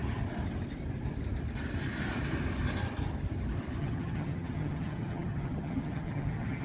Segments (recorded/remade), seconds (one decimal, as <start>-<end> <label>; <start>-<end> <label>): 0.0-3.8 recorded; 3.8-6.6 remade